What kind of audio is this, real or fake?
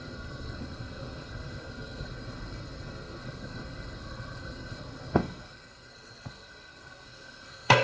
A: fake